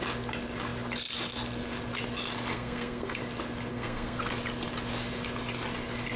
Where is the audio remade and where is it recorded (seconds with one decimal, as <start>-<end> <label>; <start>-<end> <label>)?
0.0-2.5 recorded; 2.5-3.2 remade; 3.2-3.7 recorded; 3.7-4.2 remade; 4.2-6.2 recorded